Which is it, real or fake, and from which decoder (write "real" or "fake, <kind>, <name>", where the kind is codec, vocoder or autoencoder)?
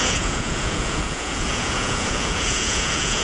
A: fake, vocoder, Vocos